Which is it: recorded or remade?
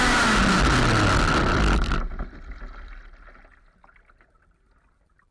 recorded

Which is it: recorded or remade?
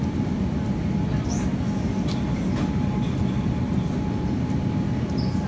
recorded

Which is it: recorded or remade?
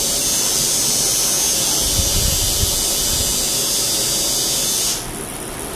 recorded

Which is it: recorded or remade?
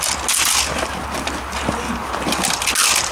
recorded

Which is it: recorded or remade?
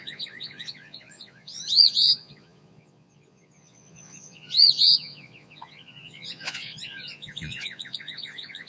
remade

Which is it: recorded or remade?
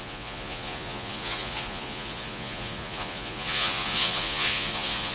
remade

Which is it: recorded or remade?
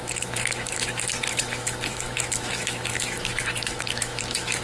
remade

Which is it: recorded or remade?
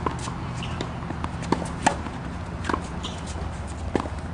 recorded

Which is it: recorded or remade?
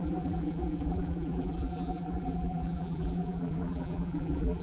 remade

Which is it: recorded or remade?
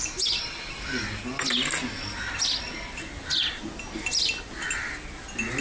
recorded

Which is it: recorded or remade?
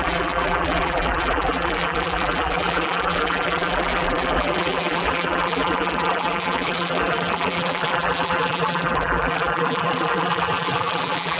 remade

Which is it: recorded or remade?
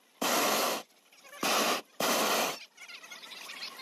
recorded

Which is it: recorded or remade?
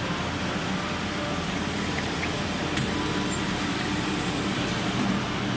remade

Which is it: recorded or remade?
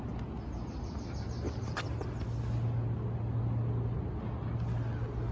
recorded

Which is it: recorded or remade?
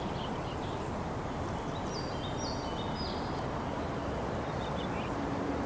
recorded